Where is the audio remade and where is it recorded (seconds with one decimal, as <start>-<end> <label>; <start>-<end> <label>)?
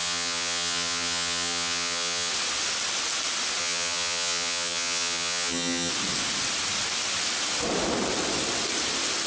0.0-2.3 remade; 2.3-3.6 recorded; 3.6-5.9 remade; 5.9-9.3 recorded